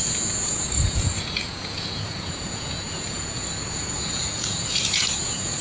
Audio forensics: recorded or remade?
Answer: remade